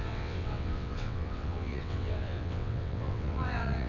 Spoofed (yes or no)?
yes